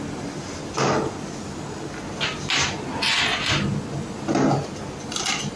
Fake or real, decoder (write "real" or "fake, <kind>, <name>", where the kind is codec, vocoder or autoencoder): real